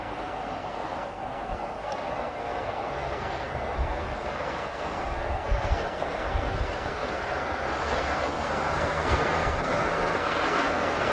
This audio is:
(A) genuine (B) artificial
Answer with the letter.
B